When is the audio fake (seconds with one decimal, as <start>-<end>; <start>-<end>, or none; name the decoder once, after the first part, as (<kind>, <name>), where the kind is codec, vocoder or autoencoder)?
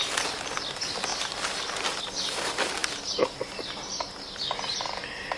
none